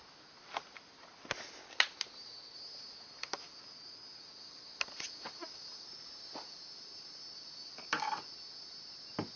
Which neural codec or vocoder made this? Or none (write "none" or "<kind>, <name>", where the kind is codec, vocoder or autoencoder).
none